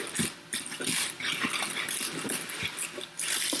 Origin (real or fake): real